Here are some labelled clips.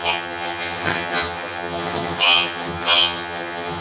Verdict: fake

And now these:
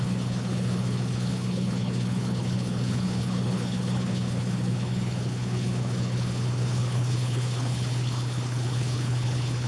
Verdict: fake